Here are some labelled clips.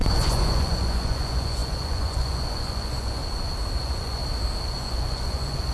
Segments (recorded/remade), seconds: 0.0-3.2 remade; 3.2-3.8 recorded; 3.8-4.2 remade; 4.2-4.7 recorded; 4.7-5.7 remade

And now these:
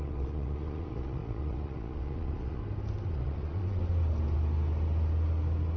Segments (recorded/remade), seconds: 0.0-2.6 remade; 2.6-3.1 recorded; 3.1-3.8 remade; 3.8-5.8 recorded

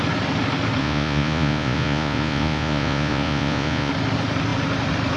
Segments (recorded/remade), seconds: 0.0-0.8 recorded; 0.8-3.9 remade; 3.9-5.2 recorded

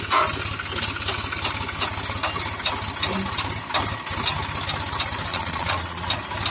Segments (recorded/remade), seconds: 0.0-5.3 recorded; 5.3-6.1 remade; 6.1-6.5 recorded

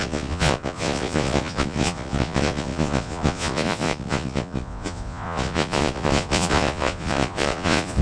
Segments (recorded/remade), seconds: 0.0-8.0 remade

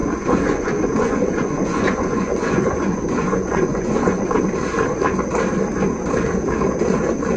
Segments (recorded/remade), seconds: 0.0-4.4 remade; 4.4-7.4 recorded